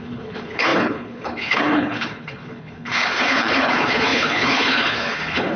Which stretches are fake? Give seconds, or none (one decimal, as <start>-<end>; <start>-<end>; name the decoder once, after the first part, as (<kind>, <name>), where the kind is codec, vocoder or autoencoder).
0.0-5.6 (codec, HILCodec)